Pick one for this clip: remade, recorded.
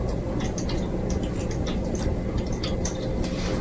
recorded